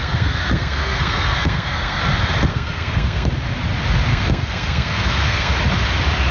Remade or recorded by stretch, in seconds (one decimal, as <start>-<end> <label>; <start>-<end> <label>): 0.0-2.0 remade; 2.0-2.5 recorded; 2.5-3.3 remade; 3.3-4.1 recorded; 4.1-5.5 remade; 5.5-6.3 recorded